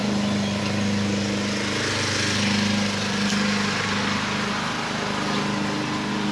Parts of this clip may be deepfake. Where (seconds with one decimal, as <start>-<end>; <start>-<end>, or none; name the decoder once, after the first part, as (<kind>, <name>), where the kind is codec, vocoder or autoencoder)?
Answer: none